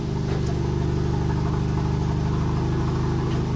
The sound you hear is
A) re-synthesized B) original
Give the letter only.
B